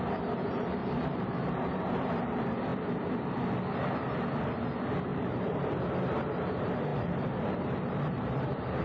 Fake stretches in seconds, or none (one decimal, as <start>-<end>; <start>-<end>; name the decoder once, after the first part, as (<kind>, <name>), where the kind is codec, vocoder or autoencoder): 0.8-2.2 (vocoder, BigVGAN v2); 5.1-5.7; 6.9-8.8